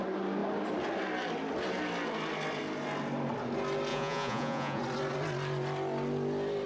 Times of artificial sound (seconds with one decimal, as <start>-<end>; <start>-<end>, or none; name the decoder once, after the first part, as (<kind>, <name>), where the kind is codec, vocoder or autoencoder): 3.9-4.8 (vocoder, Vocos)